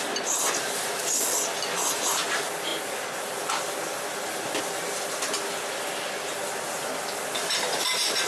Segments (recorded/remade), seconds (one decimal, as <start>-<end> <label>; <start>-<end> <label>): 0.0-8.3 recorded